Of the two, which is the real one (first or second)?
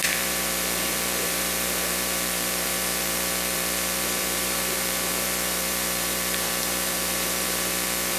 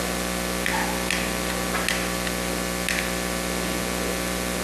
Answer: second